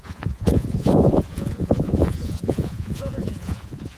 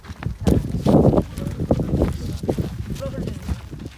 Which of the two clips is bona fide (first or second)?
second